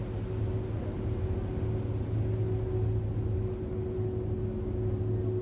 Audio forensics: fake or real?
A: real